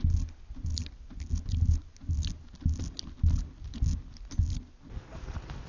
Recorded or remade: recorded